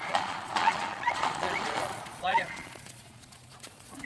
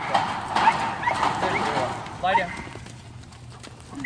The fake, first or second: first